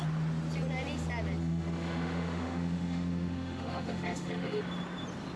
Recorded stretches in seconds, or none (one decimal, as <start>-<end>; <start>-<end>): 0.0-1.4; 4.6-5.4